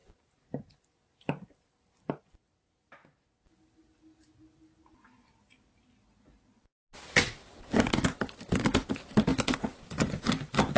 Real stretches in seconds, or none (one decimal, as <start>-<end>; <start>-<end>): 0.0-10.8